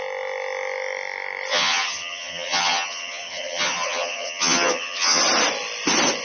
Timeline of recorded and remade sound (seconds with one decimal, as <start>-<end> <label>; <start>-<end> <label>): 0.0-1.5 recorded; 1.5-5.2 remade; 5.2-6.2 recorded